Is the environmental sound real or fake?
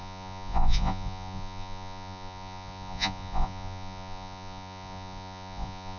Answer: fake